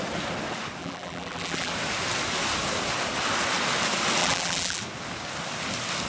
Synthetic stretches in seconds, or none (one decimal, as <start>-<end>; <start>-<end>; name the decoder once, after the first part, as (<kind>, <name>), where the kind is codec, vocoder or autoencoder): 0.8-1.7 (vocoder, BigVGAN v2); 4.2-4.8